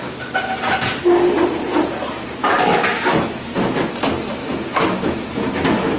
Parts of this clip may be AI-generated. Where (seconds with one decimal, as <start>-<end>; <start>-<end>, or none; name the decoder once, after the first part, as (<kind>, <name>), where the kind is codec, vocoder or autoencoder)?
2.4-3.9 (autoencoder, DAC-VAE); 4.4-6.0